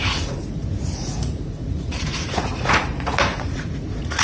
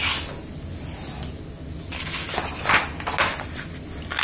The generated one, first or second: first